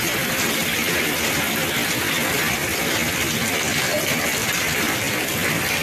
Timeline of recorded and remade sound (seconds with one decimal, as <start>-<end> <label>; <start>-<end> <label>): 0.0-5.8 recorded